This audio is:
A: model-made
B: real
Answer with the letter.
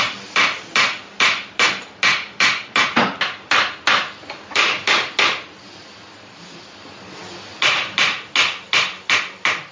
B